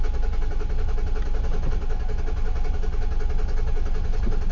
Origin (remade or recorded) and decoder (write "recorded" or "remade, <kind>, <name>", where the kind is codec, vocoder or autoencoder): recorded